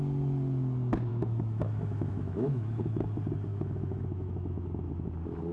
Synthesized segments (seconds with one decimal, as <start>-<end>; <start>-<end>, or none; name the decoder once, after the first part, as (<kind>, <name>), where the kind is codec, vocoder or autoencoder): 1.1-2.9 (autoencoder, DAC-VAE); 3.5-4.9